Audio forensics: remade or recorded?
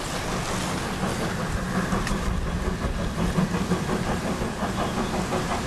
recorded